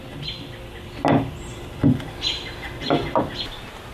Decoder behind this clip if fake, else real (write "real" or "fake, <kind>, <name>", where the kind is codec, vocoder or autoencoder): real